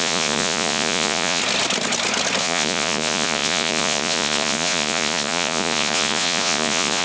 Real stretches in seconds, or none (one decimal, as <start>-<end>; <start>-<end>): 1.4-2.4